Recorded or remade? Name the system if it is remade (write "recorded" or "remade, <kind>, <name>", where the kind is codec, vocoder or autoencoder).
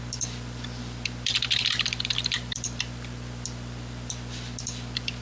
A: remade, vocoder, BigVGAN v2